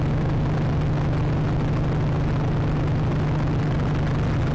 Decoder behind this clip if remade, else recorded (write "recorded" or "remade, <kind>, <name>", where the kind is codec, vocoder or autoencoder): recorded